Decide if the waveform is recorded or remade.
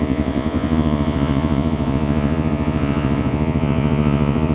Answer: remade